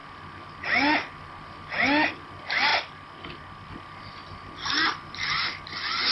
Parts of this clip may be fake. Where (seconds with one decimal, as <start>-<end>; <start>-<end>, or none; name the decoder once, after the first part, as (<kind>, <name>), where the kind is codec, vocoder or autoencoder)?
none